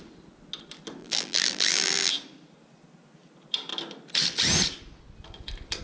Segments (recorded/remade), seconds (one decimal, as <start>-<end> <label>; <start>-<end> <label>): 0.0-1.0 recorded; 1.0-2.1 remade; 2.1-5.8 recorded